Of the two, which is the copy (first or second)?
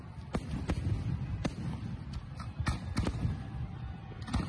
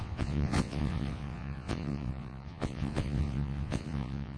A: second